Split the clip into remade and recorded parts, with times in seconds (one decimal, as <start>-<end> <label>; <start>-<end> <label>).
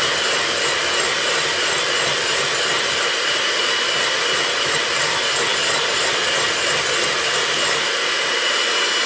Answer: 0.0-9.1 recorded